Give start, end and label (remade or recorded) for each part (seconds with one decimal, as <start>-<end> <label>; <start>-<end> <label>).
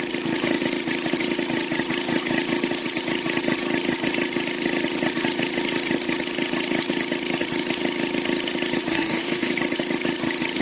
0.0-8.9 recorded; 8.9-9.5 remade; 9.5-10.6 recorded